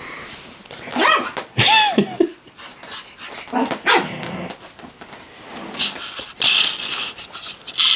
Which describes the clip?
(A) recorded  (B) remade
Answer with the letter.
A